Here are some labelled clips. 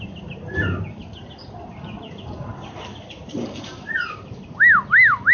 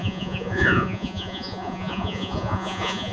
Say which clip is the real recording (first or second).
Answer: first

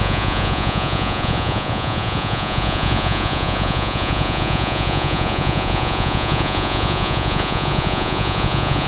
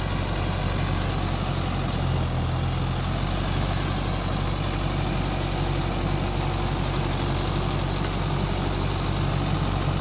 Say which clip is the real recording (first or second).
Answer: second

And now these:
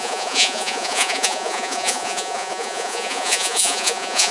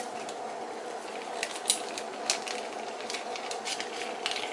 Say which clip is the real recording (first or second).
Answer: second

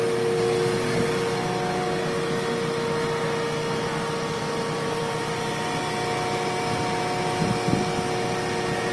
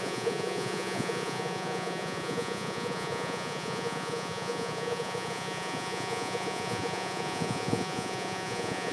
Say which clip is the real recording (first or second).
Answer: first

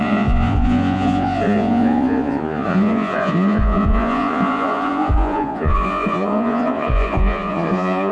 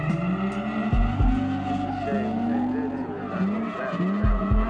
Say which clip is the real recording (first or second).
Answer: second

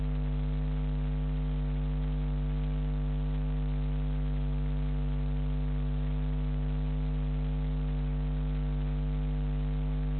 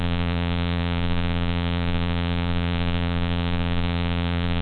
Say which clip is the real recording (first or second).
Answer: first